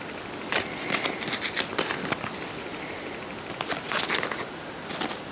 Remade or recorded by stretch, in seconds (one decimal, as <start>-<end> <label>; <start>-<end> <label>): 0.0-5.3 recorded